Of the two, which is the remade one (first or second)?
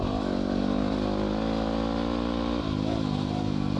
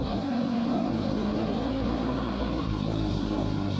second